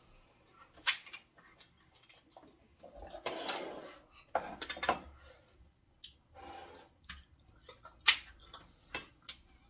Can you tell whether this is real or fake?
real